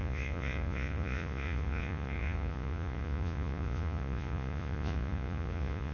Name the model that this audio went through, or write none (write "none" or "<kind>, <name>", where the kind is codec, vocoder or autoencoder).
vocoder, Vocos